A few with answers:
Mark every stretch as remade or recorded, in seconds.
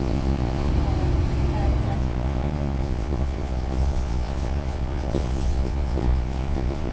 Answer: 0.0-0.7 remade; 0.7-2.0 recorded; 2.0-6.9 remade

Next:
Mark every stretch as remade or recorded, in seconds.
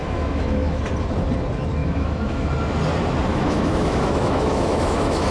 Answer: 0.0-0.8 remade; 0.8-1.8 recorded; 1.8-2.5 remade; 2.5-3.3 recorded; 3.3-5.3 remade